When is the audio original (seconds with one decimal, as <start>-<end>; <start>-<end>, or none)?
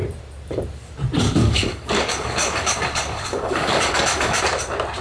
0.0-1.4; 4.4-5.0